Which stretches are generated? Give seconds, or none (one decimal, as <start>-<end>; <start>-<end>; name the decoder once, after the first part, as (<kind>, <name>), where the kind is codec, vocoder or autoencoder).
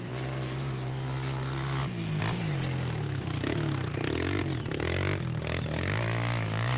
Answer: none